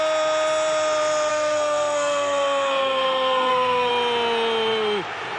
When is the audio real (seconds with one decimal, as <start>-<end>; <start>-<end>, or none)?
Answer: 0.0-1.3; 3.9-5.4